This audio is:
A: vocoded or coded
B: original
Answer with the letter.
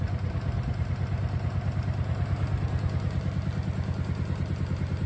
B